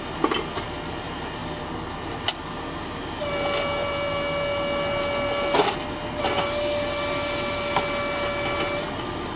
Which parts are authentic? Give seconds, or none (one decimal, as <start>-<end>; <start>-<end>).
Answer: 0.0-9.4